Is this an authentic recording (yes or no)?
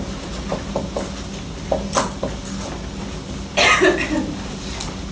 yes